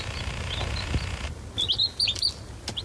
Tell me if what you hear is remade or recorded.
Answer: recorded